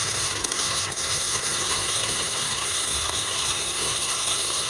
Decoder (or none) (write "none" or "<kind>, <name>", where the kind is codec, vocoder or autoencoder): codec, SNAC